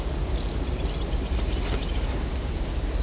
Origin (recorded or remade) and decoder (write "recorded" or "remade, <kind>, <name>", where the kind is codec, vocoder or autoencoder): recorded